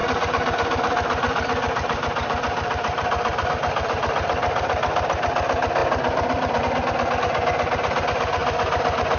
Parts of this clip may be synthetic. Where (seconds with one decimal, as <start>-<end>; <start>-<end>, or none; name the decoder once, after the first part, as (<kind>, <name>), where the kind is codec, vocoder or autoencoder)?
0.0-3.5 (vocoder, BigVGAN v2); 5.8-6.6